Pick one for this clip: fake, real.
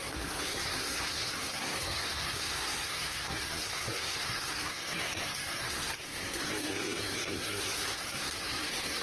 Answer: fake